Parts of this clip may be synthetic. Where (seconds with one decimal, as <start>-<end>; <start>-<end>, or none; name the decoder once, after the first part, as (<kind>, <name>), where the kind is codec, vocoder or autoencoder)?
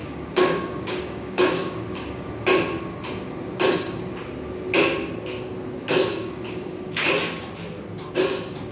0.0-2.3 (codec, DAC); 6.1-7.1